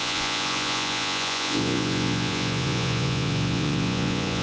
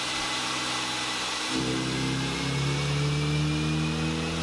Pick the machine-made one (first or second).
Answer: first